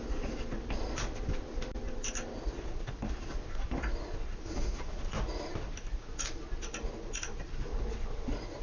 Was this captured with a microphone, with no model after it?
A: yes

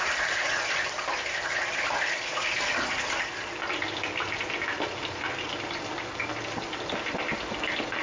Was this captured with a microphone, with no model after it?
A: yes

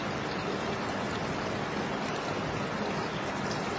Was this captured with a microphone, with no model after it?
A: yes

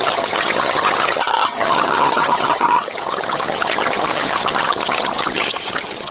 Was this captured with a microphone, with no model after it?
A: no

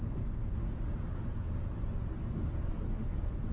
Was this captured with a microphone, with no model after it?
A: yes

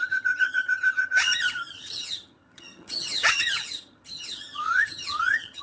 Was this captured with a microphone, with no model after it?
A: no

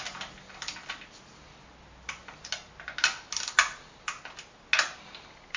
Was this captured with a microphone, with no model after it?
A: yes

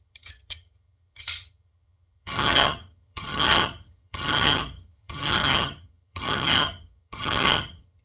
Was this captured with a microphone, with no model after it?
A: no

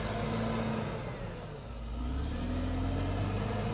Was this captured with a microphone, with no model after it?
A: yes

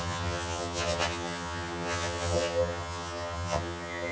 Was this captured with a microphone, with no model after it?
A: no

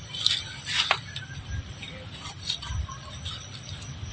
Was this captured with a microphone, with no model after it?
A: yes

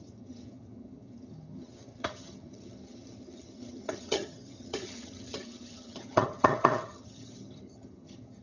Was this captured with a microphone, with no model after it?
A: no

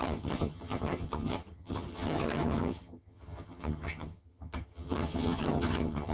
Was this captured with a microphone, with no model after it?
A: no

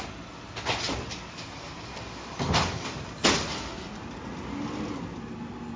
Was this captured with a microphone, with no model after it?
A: yes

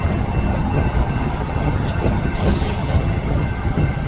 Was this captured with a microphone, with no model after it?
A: no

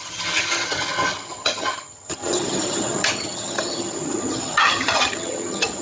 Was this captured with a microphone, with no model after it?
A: no